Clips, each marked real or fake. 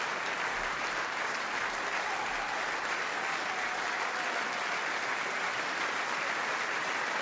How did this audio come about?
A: fake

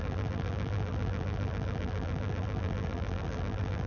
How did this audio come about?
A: fake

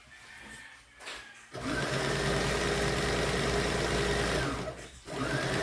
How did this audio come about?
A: real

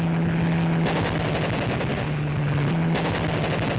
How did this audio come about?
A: real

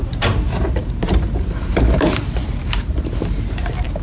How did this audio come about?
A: fake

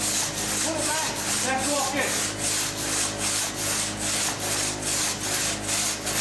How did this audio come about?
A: real